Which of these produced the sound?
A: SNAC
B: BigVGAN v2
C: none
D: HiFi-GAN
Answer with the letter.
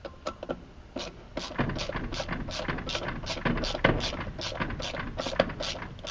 C